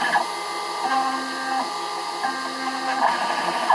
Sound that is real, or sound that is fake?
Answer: real